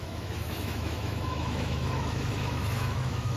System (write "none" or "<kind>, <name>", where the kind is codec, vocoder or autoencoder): autoencoder, DAC-VAE